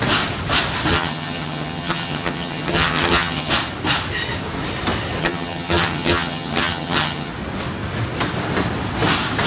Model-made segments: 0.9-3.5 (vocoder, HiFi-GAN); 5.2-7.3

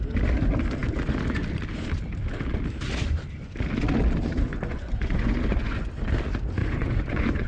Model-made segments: 4.5-5.8 (vocoder, Vocos); 6.6-7.5

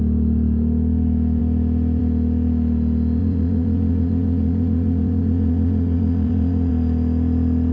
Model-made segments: 3.2-6.7 (vocoder, Vocos)